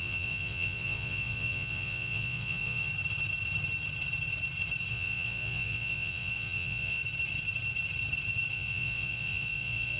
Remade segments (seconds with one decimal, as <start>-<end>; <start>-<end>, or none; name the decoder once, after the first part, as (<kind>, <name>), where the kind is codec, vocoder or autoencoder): 0.0-2.9 (vocoder, Vocos); 4.9-7.0; 8.5-10.0